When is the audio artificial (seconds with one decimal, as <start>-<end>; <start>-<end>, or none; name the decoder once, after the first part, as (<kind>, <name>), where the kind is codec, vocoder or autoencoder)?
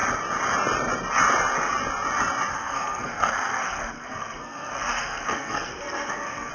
2.5-6.5 (codec, SNAC)